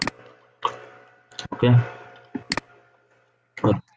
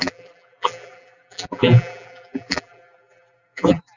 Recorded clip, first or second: first